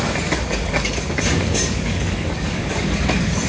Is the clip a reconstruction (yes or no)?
yes